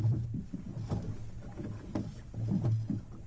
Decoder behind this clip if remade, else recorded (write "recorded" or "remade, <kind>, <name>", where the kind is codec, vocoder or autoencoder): recorded